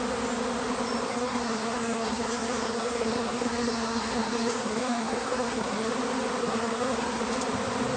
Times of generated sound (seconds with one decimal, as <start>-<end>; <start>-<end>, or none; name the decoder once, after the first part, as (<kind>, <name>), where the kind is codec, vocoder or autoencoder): 1.1-5.9 (codec, SNAC); 6.4-7.2